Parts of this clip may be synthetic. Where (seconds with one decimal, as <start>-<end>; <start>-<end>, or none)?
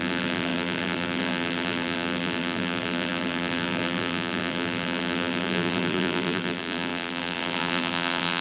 0.0-8.4